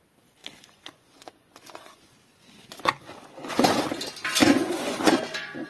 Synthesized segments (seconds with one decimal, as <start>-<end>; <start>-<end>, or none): 0.4-3.8; 4.4-5.7